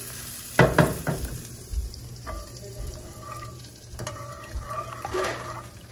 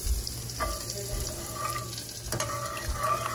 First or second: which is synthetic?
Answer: first